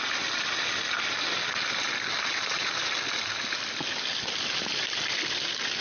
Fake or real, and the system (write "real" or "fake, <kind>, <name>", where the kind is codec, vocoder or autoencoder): real